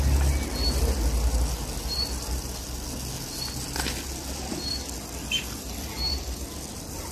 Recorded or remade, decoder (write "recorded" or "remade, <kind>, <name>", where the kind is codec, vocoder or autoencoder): recorded